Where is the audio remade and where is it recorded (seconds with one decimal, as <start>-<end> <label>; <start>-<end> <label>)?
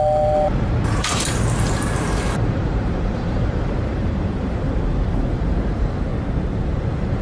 0.0-6.1 remade; 6.1-6.6 recorded; 6.6-7.2 remade